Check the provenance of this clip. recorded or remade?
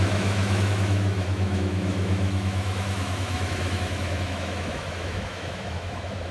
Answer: remade